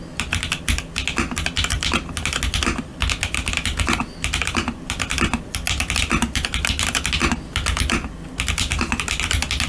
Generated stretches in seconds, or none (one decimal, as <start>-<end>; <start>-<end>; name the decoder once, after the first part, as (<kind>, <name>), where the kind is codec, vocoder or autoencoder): none